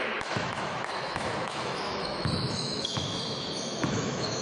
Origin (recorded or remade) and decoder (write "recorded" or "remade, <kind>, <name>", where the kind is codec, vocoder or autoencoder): remade, autoencoder, DAC-VAE